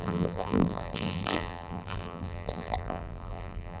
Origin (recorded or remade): remade